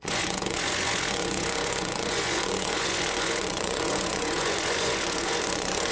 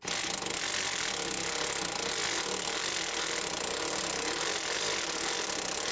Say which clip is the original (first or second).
second